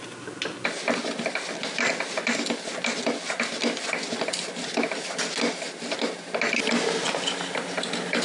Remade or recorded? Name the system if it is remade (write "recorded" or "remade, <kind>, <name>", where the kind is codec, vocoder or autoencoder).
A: recorded